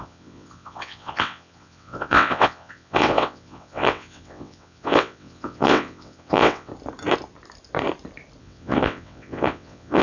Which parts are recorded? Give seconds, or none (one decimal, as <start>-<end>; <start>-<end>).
6.7-8.4